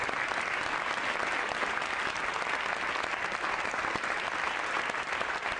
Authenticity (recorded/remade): recorded